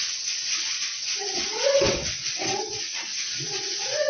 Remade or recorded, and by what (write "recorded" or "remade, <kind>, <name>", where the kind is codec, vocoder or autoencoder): remade, vocoder, WaveNeXt